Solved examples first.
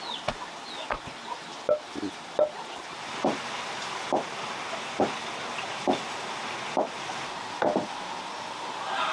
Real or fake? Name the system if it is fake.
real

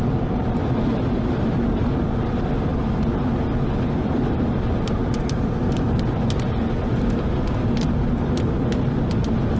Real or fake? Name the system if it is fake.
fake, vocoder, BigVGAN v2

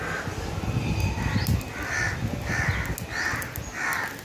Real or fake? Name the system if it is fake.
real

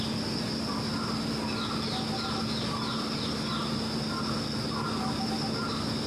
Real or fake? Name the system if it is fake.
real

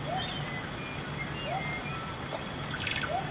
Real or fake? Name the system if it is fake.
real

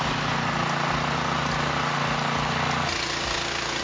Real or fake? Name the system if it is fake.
real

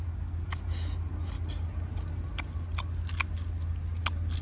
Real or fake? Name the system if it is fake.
real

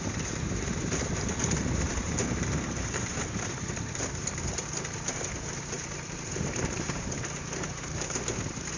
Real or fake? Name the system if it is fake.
fake, vocoder, BigVGAN v2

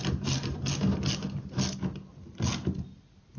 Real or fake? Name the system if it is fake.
fake, vocoder, BigVGAN v2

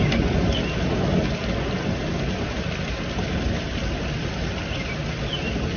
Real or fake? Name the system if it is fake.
fake, vocoder, BigVGAN v2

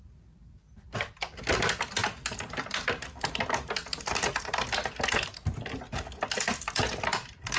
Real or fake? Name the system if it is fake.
real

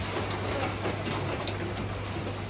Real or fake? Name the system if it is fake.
real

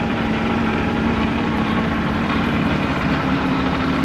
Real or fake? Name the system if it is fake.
fake, vocoder, BigVGAN v2